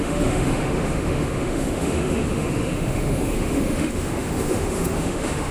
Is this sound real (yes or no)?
no